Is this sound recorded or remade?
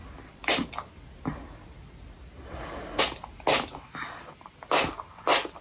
recorded